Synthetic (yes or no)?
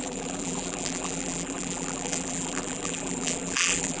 yes